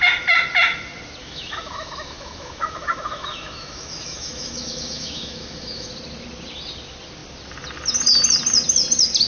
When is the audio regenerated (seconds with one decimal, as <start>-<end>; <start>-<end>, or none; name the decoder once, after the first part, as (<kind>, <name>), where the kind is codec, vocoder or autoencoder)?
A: 1.2-5.9 (autoencoder, DAC-VAE)